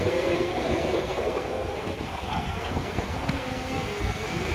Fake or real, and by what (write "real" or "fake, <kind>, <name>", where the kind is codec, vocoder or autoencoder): fake, codec, SNAC